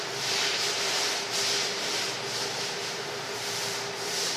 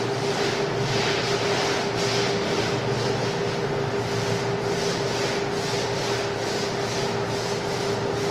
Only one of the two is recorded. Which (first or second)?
second